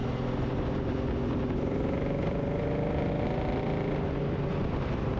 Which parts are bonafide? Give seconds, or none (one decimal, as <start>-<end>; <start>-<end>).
0.0-5.2

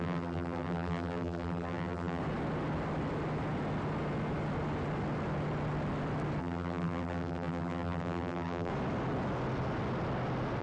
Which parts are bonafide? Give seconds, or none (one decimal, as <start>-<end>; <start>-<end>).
2.2-6.4; 8.7-10.6

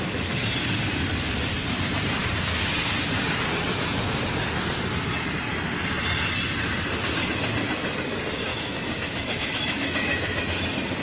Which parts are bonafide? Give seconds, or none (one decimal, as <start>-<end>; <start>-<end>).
0.0-8.5; 10.4-11.0